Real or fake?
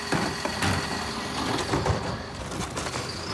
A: real